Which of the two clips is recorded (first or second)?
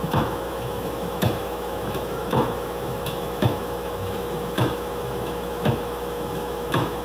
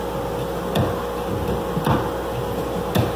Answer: second